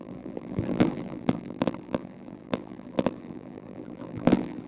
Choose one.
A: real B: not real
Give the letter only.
B